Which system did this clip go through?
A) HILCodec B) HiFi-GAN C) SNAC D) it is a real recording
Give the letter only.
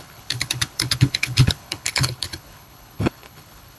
A